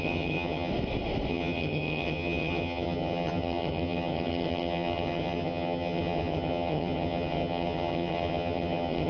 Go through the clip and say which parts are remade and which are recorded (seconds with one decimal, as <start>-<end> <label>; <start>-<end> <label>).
0.0-0.7 remade; 0.7-1.3 recorded; 1.3-9.1 remade

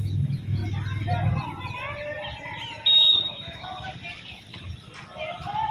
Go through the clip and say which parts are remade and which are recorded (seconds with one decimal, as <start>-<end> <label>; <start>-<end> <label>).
0.0-0.6 remade; 0.6-3.1 recorded; 3.1-3.7 remade; 3.7-5.7 recorded

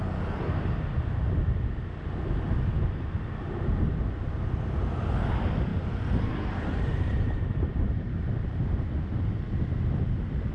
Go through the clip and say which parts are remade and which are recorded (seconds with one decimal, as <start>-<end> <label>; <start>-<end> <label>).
0.0-5.7 recorded; 5.7-8.3 remade; 8.3-10.5 recorded

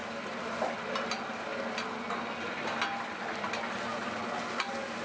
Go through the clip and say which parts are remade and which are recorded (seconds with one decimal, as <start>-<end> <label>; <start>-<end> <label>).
0.0-5.0 recorded

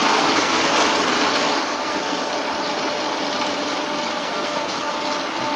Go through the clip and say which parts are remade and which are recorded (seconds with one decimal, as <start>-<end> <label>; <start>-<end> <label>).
0.0-0.7 remade; 0.7-1.7 recorded; 1.7-2.3 remade; 2.3-4.1 recorded; 4.1-5.0 remade; 5.0-5.6 recorded

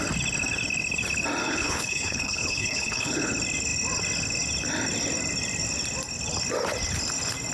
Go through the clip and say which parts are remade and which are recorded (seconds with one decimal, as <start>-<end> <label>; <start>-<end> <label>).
0.0-1.4 recorded; 1.4-3.3 remade; 3.3-7.5 recorded

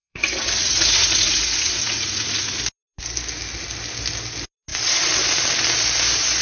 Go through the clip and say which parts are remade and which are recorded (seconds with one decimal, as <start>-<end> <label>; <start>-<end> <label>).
0.0-2.6 remade; 2.6-6.4 recorded

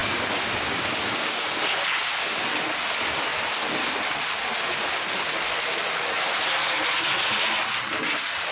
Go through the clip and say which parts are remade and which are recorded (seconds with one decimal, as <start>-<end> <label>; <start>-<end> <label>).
0.0-1.7 remade; 1.7-8.5 recorded